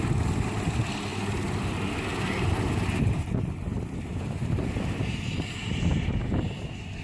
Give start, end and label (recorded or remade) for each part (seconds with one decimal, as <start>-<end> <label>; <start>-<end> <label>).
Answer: 0.0-7.0 recorded